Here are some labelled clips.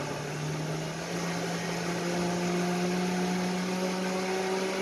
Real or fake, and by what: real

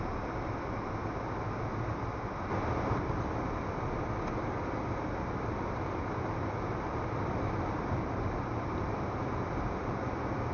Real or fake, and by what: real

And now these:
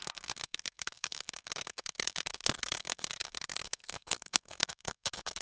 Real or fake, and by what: fake, codec, SNAC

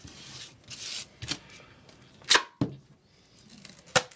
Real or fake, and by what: real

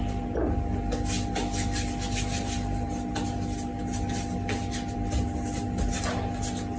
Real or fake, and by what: real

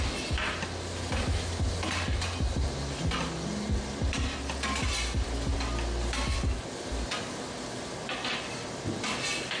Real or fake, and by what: real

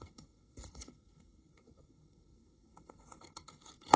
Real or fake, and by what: fake, codec, SNAC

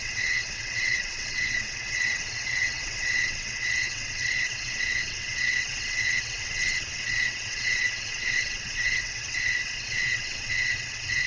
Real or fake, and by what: fake, vocoder, WaveNeXt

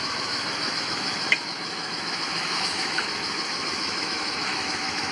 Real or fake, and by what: fake, autoencoder, DAC-VAE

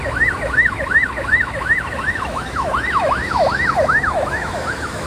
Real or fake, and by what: fake, autoencoder, DAC-VAE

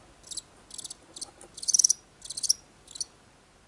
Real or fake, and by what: real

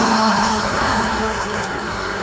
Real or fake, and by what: fake, codec, SNAC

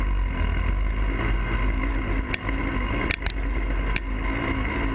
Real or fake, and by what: real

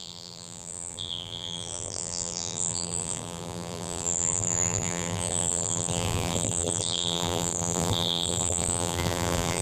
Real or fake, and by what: fake, vocoder, BigVGAN v2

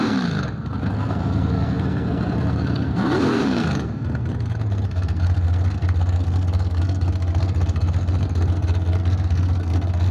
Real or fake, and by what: fake, codec, SNAC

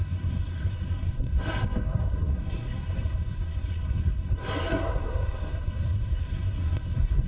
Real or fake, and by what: fake, codec, SNAC